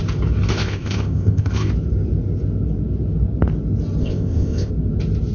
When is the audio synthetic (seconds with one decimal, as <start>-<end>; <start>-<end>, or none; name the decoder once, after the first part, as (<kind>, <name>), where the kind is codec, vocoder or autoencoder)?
0.5-1.7 (codec, ZipCodec); 4.0-4.7